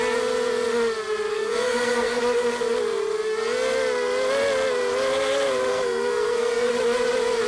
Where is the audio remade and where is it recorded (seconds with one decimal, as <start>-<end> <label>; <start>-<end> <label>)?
0.0-1.3 recorded; 1.3-2.2 remade; 2.2-5.7 recorded; 5.7-6.7 remade; 6.7-7.5 recorded